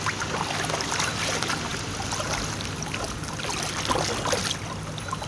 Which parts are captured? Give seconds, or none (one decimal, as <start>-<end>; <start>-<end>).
0.0-5.3